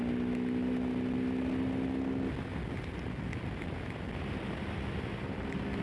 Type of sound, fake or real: real